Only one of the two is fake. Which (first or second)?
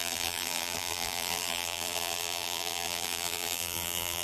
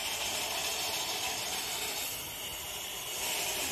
first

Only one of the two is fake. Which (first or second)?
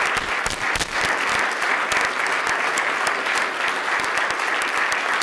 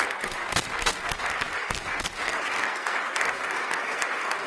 second